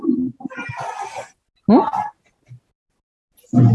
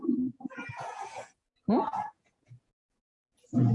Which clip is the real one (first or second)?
first